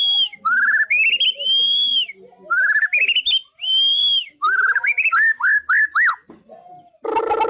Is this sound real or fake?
real